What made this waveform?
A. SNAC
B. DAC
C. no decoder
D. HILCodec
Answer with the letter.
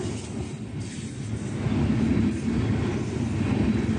C